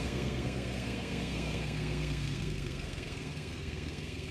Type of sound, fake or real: fake